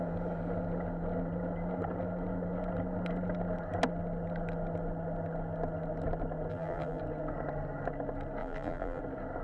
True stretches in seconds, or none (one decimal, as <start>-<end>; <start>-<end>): 0.0-6.5; 7.0-8.4; 9.0-9.4